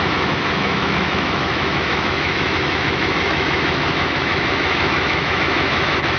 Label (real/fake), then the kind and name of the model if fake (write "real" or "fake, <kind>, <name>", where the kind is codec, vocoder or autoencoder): fake, autoencoder, DAC-VAE